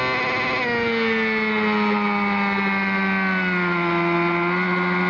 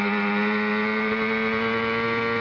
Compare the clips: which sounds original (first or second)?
first